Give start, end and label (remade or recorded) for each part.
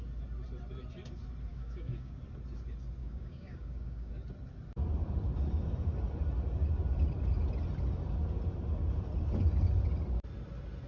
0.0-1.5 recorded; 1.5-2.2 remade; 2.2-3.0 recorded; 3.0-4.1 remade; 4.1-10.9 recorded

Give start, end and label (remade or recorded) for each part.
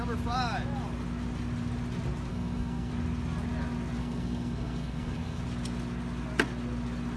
0.0-2.3 recorded; 2.3-2.9 remade; 2.9-4.0 recorded; 4.0-5.4 remade; 5.4-7.2 recorded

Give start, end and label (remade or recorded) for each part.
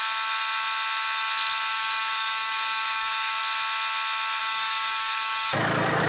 0.0-1.7 recorded; 1.7-3.4 remade; 3.4-4.4 recorded; 4.4-6.1 remade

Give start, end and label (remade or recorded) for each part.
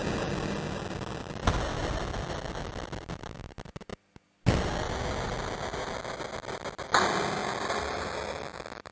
0.0-8.9 recorded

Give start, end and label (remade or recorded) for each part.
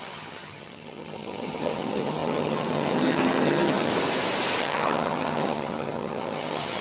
0.0-3.9 remade; 3.9-4.6 recorded; 4.6-6.8 remade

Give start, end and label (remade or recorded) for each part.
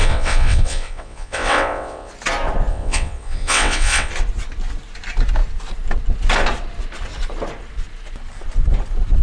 0.0-2.1 remade; 2.1-2.7 recorded; 2.7-4.1 remade; 4.1-9.2 recorded